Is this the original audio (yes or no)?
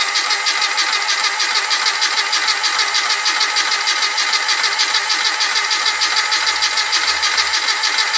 yes